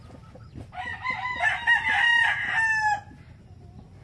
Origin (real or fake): real